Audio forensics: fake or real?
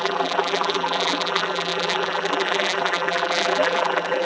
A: fake